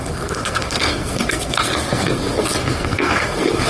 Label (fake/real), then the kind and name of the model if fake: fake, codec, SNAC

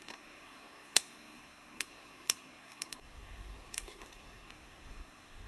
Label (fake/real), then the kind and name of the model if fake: fake, codec, SNAC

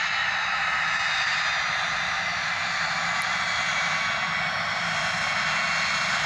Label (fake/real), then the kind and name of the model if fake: real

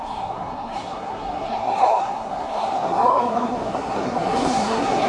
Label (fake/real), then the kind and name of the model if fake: fake, codec, SNAC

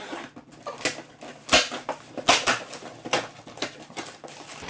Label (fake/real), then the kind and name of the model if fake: real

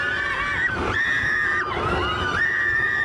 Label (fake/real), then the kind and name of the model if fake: fake, vocoder, BigVGAN v2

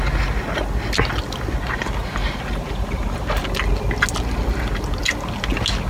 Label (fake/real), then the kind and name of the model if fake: real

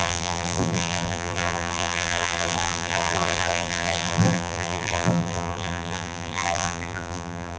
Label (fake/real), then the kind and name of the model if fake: fake, vocoder, BigVGAN v2